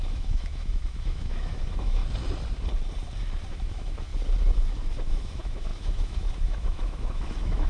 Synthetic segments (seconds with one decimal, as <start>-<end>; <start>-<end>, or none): 0.0-2.0; 3.5-4.1; 5.1-7.7